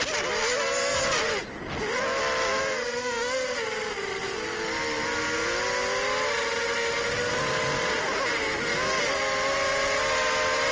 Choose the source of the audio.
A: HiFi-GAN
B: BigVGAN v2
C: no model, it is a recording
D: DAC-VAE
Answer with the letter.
C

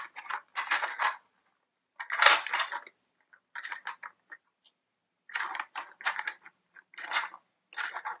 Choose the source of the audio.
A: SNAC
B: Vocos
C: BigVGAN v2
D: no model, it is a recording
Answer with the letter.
D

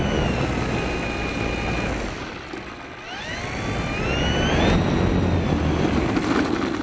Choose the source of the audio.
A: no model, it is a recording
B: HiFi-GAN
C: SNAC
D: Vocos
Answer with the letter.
A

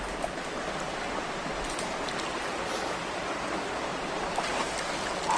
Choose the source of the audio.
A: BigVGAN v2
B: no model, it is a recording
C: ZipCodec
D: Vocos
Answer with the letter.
B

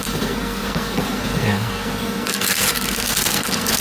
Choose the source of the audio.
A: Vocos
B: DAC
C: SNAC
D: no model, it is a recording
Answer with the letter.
C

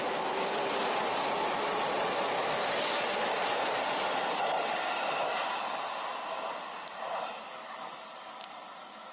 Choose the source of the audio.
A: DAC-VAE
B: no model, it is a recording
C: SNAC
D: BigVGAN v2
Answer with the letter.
B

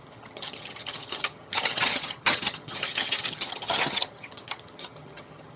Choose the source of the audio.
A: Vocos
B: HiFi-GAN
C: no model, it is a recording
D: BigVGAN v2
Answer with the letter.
B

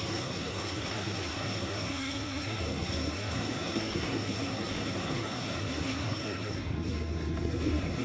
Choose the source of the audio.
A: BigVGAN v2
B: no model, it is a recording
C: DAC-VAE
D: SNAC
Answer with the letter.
D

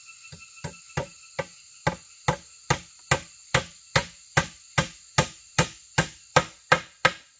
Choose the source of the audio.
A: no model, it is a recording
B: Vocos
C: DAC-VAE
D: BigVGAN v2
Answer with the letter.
A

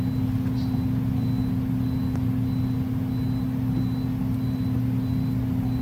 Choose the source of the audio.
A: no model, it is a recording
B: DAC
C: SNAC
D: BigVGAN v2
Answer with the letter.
A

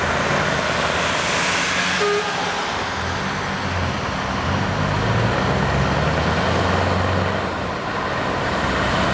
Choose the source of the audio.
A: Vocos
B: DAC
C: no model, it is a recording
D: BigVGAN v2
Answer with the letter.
C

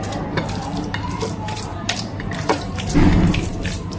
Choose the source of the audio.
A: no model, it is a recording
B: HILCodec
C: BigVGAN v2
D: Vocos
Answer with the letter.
C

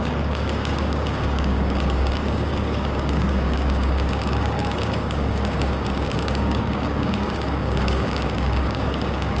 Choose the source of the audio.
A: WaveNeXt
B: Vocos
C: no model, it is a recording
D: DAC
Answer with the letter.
D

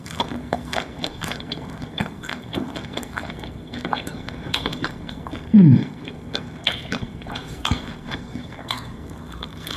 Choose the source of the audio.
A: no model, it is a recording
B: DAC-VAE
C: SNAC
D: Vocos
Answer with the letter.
C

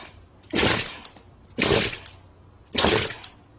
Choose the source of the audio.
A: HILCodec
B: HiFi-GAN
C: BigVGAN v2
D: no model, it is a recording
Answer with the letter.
D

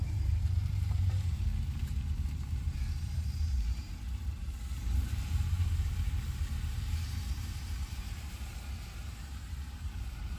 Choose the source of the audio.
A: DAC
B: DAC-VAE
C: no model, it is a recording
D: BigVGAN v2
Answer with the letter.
D